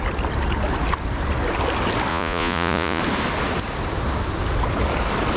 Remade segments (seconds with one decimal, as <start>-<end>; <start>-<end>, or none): 2.1-3.0